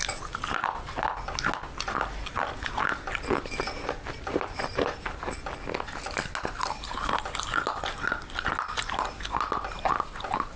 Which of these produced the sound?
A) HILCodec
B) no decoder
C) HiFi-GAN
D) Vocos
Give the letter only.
B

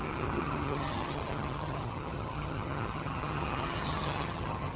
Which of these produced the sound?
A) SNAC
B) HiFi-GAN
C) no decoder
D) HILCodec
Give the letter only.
B